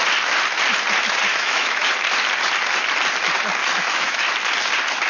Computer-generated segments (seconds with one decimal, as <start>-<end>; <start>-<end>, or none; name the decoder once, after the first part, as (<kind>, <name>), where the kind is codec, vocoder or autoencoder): 1.3-1.9 (autoencoder, DAC-VAE); 3.6-4.3

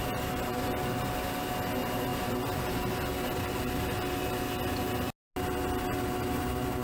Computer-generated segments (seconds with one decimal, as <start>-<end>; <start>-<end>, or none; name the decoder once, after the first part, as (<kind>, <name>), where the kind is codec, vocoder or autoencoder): none

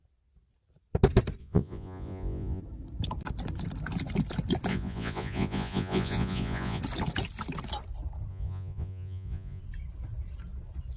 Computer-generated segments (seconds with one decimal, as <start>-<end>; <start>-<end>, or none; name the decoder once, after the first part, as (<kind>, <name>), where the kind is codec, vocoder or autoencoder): 1.4-2.6 (vocoder, Vocos); 4.7-6.8; 8.3-9.6

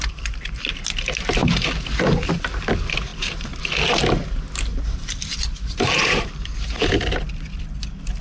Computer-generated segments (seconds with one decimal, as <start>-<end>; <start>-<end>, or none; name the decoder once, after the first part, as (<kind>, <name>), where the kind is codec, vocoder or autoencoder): 1.4-2.3 (vocoder, BigVGAN v2); 3.1-3.6; 4.7-7.6